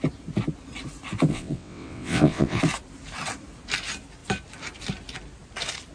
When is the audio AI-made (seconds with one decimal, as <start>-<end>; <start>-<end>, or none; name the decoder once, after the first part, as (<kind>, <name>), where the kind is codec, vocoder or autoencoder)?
1.3-2.6 (vocoder, WaveNeXt)